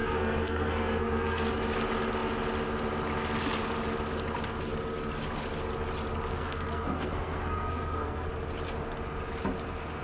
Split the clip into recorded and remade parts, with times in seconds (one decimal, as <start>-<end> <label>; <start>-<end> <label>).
0.0-1.5 remade; 1.5-6.3 recorded; 6.3-8.3 remade; 8.3-10.0 recorded